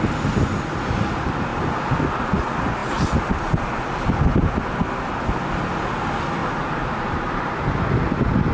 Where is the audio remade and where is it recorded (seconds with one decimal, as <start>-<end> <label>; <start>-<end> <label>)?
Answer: 0.0-6.4 recorded; 6.4-7.3 remade; 7.3-8.5 recorded